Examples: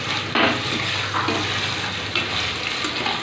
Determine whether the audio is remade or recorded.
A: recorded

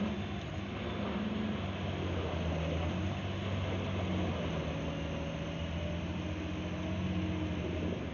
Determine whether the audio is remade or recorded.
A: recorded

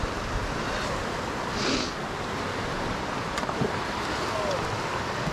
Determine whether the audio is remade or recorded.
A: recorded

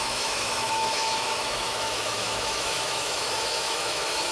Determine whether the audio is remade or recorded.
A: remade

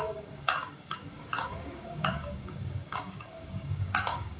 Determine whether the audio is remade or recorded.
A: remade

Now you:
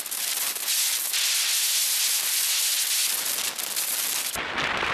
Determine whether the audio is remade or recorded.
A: recorded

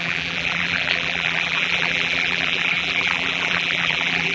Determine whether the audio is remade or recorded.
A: remade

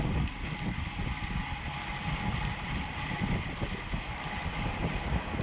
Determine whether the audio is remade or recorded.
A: recorded